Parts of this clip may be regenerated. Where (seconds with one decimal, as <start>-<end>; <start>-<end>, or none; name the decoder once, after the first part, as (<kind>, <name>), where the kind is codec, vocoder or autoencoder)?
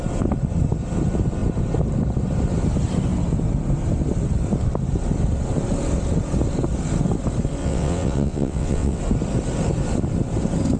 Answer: 7.6-9.0 (vocoder, WaveNeXt)